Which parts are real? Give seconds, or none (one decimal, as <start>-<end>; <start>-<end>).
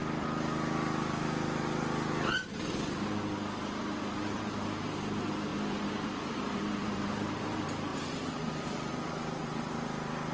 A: 0.0-4.2